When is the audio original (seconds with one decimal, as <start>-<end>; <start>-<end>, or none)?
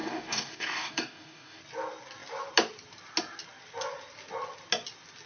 1.6-5.3